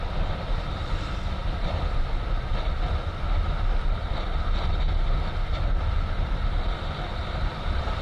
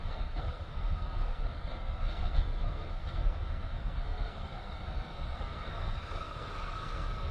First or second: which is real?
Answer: first